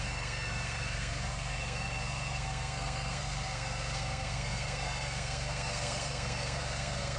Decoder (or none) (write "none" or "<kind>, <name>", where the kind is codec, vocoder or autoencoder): codec, SNAC